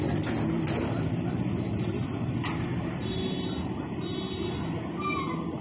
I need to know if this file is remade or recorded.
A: recorded